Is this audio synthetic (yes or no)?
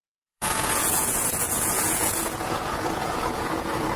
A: yes